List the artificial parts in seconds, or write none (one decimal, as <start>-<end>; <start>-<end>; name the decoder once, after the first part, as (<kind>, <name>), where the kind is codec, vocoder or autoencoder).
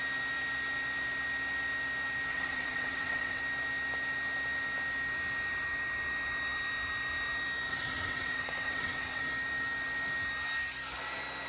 2.3-3.4 (vocoder, WaveNeXt); 7.7-9.2